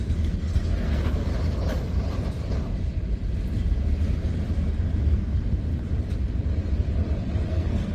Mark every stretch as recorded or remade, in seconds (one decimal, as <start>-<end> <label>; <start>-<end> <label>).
0.0-1.3 remade; 1.3-5.0 recorded; 5.0-5.7 remade; 5.7-7.5 recorded; 7.5-7.9 remade